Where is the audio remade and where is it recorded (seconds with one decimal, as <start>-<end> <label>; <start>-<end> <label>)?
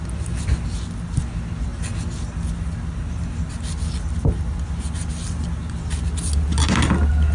0.0-7.3 recorded